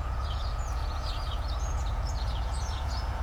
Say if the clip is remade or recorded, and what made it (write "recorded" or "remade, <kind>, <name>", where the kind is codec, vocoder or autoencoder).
remade, vocoder, Vocos